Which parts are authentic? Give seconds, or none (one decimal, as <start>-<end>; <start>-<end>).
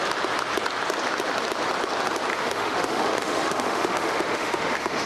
0.0-2.3